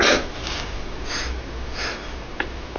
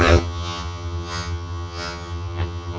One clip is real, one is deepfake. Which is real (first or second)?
first